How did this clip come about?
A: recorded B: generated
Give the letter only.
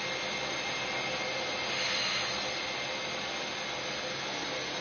A